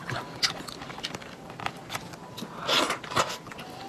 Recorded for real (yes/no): yes